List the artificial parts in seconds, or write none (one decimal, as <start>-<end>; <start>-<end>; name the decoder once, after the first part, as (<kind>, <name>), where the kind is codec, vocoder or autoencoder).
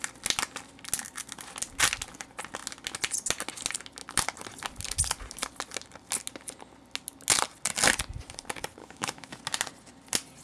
8.8-9.4 (autoencoder, DAC-VAE)